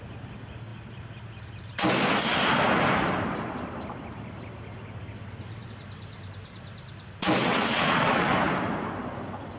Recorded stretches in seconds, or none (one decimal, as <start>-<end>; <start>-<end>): 0.0-7.4; 8.3-9.6